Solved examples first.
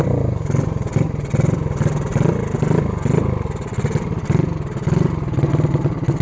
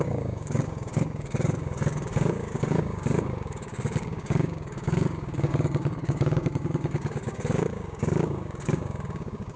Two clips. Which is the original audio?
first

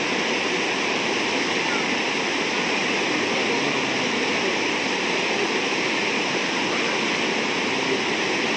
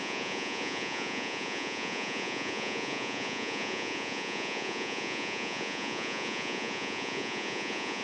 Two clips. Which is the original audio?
first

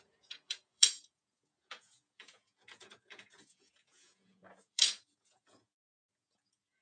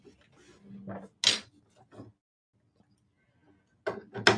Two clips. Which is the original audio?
second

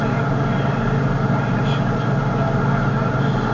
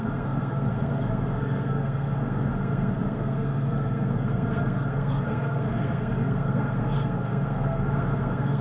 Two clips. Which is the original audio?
first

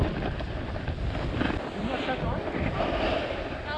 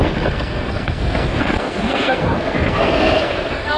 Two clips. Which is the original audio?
first